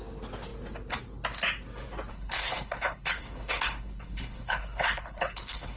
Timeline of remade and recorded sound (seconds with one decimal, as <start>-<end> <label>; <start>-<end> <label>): 0.0-2.1 recorded; 2.1-5.8 remade